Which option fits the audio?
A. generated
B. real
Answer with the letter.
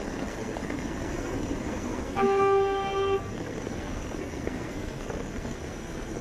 A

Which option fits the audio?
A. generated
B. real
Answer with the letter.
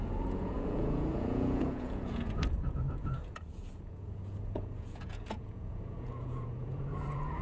A